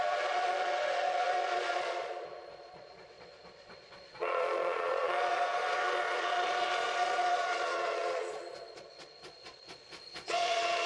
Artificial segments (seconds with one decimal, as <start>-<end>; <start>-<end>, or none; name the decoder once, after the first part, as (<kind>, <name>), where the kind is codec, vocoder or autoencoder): 0.0-10.9 (vocoder, Vocos)